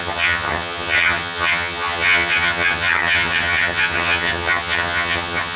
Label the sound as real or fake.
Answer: fake